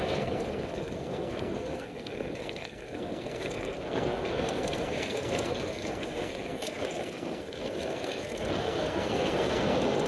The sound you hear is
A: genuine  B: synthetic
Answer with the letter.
B